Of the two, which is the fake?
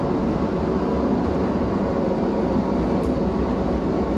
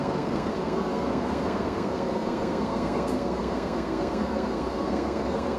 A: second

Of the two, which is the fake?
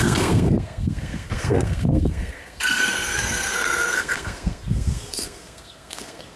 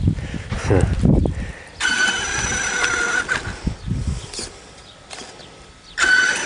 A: first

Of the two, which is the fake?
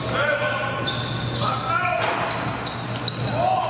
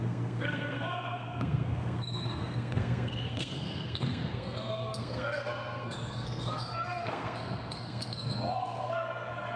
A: second